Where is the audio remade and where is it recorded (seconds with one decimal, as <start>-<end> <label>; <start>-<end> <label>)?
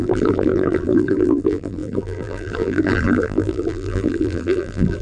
0.0-5.0 remade